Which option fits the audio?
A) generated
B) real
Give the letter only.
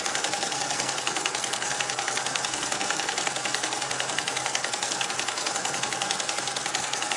A